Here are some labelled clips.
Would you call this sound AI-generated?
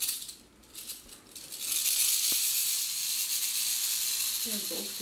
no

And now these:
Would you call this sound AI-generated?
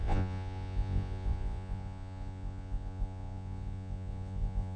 yes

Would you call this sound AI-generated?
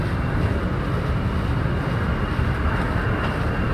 yes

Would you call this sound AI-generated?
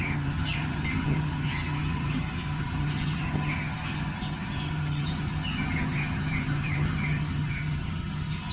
yes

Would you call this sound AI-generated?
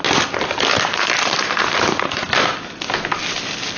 no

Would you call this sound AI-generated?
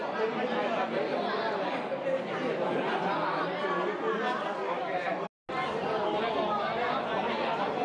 no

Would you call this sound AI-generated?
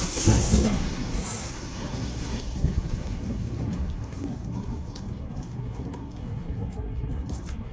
yes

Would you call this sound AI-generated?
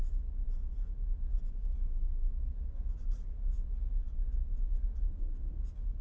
no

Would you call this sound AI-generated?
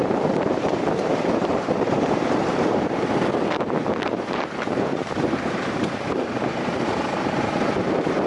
yes